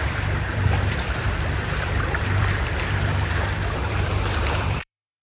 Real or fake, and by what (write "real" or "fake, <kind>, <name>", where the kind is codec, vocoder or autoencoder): fake, vocoder, BigVGAN v2